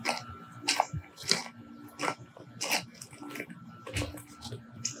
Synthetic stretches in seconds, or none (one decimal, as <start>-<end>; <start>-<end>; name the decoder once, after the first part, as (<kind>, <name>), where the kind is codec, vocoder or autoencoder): 0.0-1.4 (vocoder, BigVGAN v2); 3.6-5.0